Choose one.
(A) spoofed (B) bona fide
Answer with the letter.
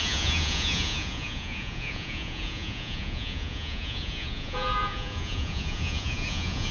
A